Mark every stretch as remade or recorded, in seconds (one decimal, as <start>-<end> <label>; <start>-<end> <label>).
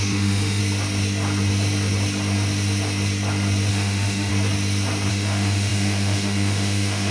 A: 0.0-0.6 remade; 0.6-3.7 recorded; 3.7-4.3 remade; 4.3-5.1 recorded; 5.1-7.1 remade